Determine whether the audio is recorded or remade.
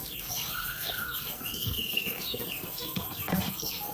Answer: remade